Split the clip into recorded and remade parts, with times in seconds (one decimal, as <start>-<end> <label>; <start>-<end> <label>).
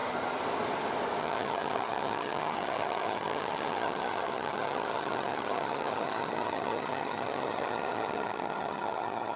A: 0.0-1.2 recorded; 1.2-9.4 remade